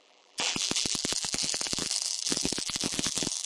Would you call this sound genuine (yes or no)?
no